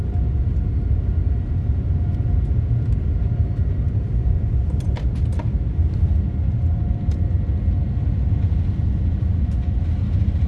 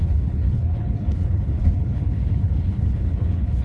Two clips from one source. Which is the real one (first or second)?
first